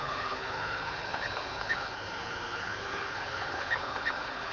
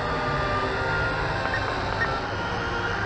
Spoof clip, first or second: first